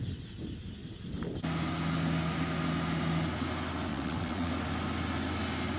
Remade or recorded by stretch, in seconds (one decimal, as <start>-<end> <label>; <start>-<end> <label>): 0.0-3.9 recorded; 3.9-4.5 remade; 4.5-5.8 recorded

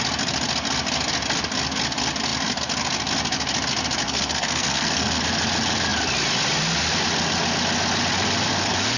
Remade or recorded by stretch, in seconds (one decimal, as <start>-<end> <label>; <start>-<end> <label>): 0.0-4.0 recorded; 4.0-5.2 remade; 5.2-9.0 recorded

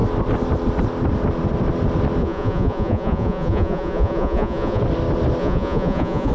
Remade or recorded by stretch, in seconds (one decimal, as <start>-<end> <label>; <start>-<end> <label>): 0.0-2.2 recorded; 2.2-4.8 remade; 4.8-5.4 recorded; 5.4-6.3 remade

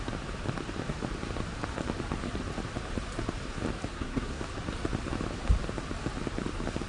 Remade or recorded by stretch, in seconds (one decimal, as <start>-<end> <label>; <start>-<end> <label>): 0.0-3.9 recorded; 3.9-4.4 remade; 4.4-6.9 recorded

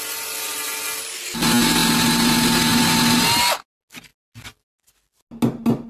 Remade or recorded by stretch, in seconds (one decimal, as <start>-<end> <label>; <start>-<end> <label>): 0.0-5.9 recorded

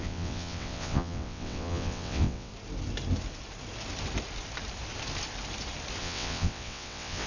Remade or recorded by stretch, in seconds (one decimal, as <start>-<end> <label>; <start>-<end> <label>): 0.0-2.5 remade; 2.5-6.0 recorded; 6.0-7.3 remade

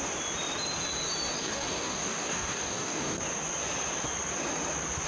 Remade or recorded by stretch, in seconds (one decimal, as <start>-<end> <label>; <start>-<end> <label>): 0.0-1.4 recorded; 1.4-3.2 remade; 3.2-5.1 recorded